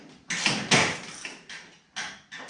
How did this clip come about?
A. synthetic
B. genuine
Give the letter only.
B